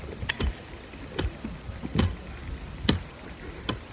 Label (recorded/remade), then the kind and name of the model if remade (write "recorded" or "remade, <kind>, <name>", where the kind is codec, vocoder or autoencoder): recorded